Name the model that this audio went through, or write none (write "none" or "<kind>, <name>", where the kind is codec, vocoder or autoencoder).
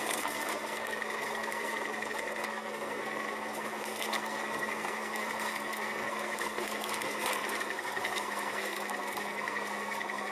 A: codec, SNAC